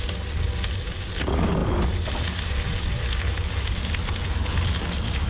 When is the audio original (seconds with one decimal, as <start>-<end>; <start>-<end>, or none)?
0.0-5.3